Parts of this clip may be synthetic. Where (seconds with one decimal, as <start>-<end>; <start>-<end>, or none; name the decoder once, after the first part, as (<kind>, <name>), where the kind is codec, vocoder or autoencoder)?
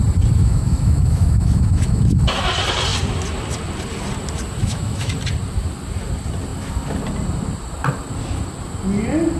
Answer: 0.4-2.2 (autoencoder, DAC-VAE); 4.6-5.1